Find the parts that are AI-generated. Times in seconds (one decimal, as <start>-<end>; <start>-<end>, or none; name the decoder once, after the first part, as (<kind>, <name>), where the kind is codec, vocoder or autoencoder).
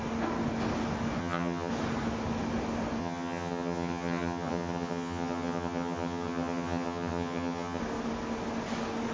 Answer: 1.2-1.7 (vocoder, HiFi-GAN); 3.0-7.8